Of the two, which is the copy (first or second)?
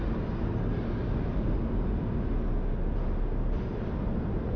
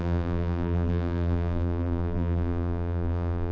second